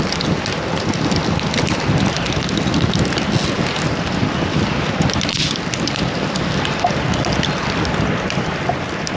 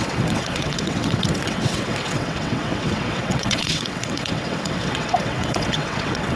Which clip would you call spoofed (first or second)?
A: second